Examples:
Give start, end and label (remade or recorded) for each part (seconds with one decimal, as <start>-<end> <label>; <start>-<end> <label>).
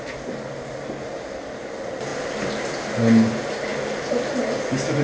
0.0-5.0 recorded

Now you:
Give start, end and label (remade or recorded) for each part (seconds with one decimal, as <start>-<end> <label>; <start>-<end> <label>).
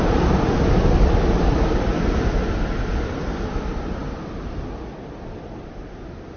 0.0-6.4 recorded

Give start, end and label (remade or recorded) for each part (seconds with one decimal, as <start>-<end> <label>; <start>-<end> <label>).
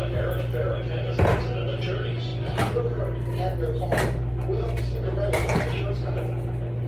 0.0-5.4 recorded; 5.4-6.1 remade; 6.1-6.9 recorded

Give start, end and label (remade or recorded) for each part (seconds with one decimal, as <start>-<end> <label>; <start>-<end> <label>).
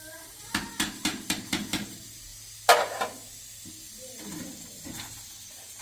0.0-1.1 remade; 1.1-1.7 recorded; 1.7-2.3 remade; 2.3-5.8 recorded